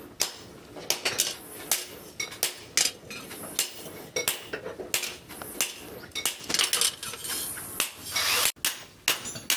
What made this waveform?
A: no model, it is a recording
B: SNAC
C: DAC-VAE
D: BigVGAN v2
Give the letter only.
A